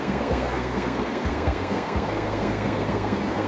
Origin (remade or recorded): remade